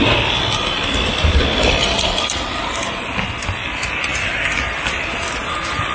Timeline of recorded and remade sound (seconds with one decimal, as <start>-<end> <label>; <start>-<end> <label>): 0.0-1.3 recorded; 1.3-2.6 remade; 2.6-4.1 recorded; 4.1-4.6 remade; 4.6-5.9 recorded